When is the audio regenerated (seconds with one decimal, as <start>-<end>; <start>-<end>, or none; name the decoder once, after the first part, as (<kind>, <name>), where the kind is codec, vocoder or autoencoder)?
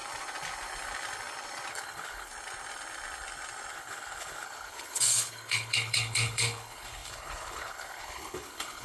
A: 1.7-2.3 (codec, HILCodec); 3.7-8.8